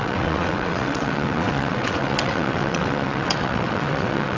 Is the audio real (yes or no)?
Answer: no